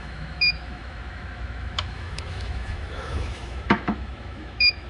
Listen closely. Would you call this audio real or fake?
fake